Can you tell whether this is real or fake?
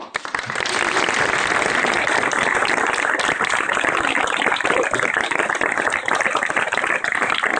fake